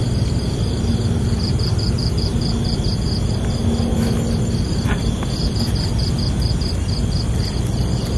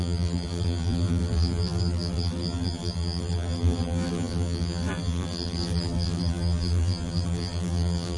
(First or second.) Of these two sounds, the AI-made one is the second